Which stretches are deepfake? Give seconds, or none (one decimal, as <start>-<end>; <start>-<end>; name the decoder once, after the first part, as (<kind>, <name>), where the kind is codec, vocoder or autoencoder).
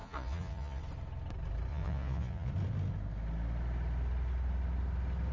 0.0-0.8 (vocoder, Vocos); 1.7-2.5